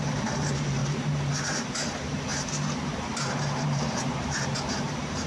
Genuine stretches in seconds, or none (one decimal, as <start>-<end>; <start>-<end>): none